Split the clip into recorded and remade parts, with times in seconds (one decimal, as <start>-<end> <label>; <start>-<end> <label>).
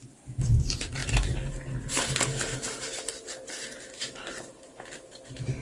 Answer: 0.0-5.6 recorded